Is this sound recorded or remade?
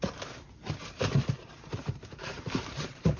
remade